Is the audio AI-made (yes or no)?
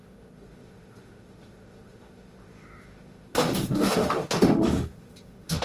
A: yes